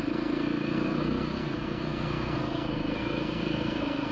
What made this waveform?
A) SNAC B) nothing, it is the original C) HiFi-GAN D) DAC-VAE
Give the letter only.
A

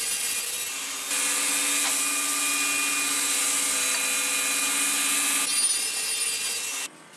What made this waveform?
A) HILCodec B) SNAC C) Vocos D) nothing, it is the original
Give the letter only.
D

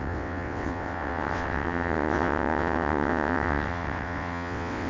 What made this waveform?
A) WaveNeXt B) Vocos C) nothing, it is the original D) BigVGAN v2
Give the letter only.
A